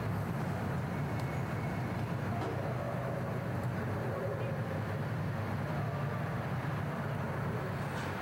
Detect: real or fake real